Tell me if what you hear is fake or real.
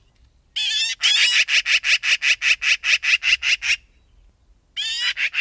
real